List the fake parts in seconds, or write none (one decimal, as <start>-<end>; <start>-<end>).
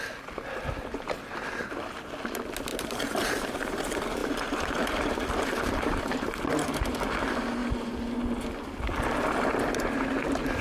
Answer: 2.7-3.8; 4.2-6.0